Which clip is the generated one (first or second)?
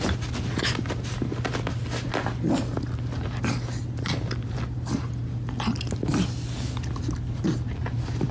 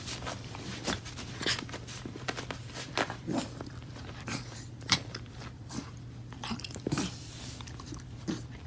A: second